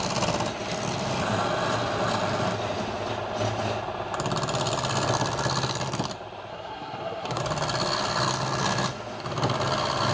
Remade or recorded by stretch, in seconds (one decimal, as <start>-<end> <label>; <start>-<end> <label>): 0.0-6.5 recorded; 6.5-7.4 remade; 7.4-10.1 recorded